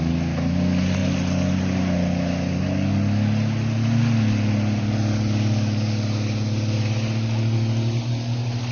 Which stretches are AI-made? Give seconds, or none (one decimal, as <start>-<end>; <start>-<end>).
none